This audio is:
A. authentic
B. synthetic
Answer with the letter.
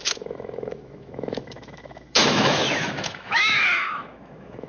B